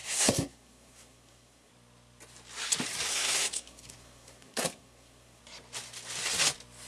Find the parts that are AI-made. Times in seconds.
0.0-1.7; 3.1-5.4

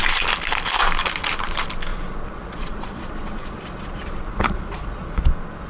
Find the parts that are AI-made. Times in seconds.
1.9-5.2